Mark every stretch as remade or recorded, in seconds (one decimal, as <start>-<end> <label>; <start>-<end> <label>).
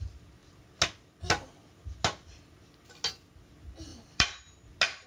0.0-3.9 recorded; 3.9-4.6 remade; 4.6-5.1 recorded